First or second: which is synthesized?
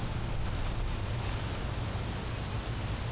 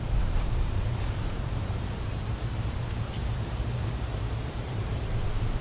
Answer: second